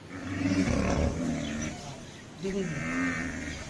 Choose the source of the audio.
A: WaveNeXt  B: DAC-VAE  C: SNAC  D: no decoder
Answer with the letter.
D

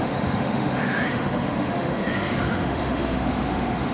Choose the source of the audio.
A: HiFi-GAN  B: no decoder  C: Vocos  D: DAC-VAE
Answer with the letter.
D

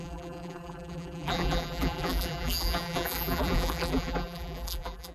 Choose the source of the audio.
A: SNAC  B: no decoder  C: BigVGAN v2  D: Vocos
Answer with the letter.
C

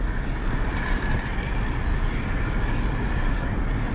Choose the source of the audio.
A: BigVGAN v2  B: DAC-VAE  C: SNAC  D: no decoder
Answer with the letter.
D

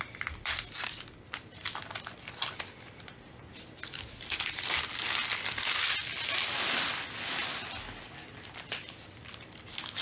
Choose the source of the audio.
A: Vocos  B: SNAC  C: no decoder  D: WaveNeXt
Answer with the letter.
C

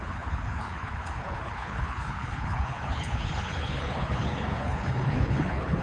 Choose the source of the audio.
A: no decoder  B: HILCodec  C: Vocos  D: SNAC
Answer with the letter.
B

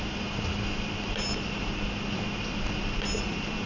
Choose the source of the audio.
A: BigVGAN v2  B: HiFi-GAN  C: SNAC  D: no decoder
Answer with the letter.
D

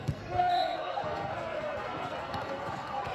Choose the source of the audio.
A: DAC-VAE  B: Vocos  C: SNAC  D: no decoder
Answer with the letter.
C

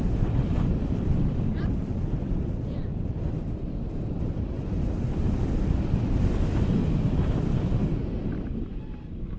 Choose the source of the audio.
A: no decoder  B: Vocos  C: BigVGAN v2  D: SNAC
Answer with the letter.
C